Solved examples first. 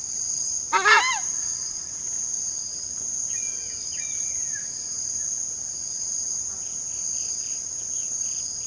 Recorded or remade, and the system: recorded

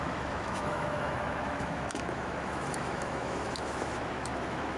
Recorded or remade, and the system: remade, autoencoder, DAC-VAE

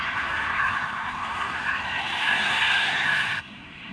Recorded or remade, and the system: remade, codec, SNAC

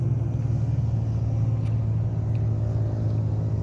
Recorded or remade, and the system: recorded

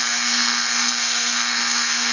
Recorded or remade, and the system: remade, codec, SNAC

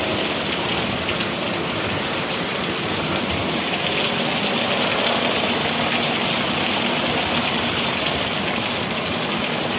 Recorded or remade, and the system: recorded